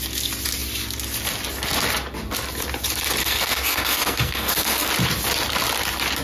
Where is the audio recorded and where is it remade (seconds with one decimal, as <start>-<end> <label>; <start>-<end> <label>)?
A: 0.0-3.2 recorded; 3.2-4.9 remade; 4.9-6.2 recorded